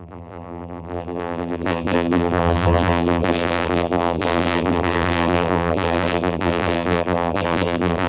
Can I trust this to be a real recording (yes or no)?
no